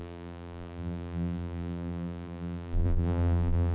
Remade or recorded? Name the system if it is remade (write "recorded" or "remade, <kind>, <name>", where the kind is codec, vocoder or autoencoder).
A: remade, vocoder, BigVGAN v2